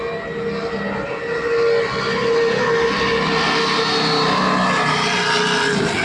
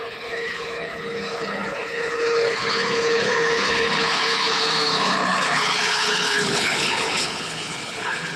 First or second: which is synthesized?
second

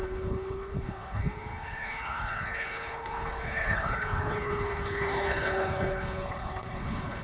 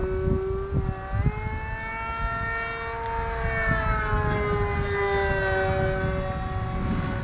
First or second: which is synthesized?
first